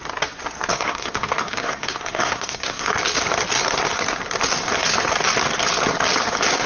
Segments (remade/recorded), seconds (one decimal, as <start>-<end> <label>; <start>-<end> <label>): 0.0-0.7 recorded; 0.7-2.9 remade; 2.9-6.7 recorded